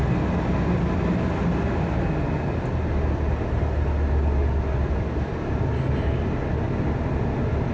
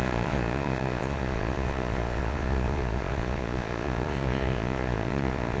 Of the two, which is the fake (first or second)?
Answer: second